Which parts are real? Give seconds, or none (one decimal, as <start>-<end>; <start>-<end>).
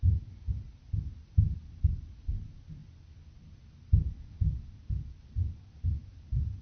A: 0.0-6.6